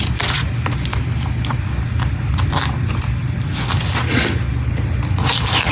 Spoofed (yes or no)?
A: no